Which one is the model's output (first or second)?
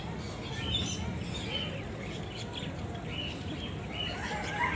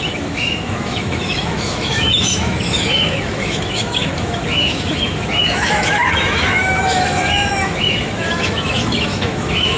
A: second